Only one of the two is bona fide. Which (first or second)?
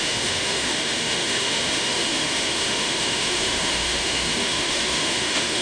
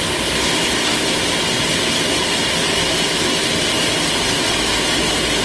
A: second